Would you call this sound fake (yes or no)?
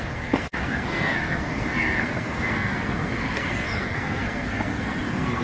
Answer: yes